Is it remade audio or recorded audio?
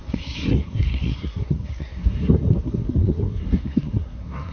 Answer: remade